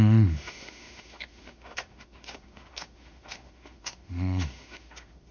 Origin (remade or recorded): remade